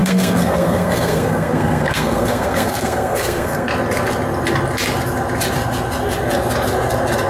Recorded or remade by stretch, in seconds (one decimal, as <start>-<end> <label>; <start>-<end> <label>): 0.0-3.7 remade; 3.7-7.3 recorded